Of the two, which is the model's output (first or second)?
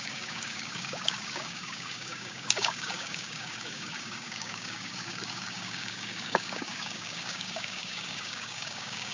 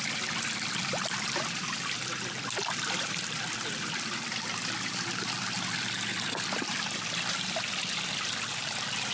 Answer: first